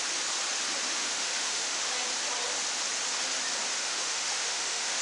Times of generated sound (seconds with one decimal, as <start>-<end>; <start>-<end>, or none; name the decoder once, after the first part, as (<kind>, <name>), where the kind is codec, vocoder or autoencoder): 0.9-1.9 (autoencoder, DAC-VAE); 3.8-5.0